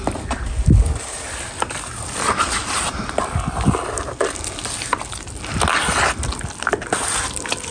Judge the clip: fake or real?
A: real